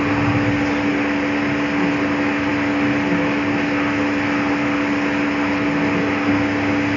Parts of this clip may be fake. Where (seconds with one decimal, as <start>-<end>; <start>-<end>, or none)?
none